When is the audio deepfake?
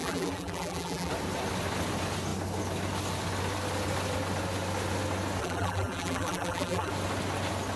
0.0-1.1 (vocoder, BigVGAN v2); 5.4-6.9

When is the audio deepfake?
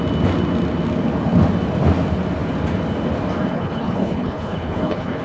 3.5-5.2 (codec, HILCodec)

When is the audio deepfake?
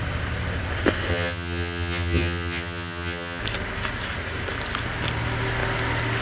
1.1-3.4 (vocoder, HiFi-GAN)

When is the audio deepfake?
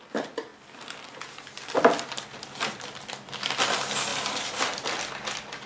none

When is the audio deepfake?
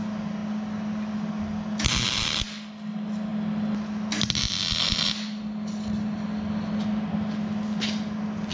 none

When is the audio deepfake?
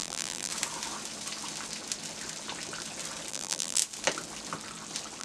0.0-0.5 (vocoder, BigVGAN v2); 3.3-3.8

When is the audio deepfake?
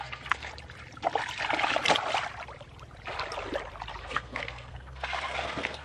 0.0-0.5 (codec, SNAC); 4.0-5.8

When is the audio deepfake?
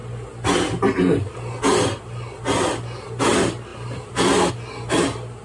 3.7-4.5 (vocoder, BigVGAN v2)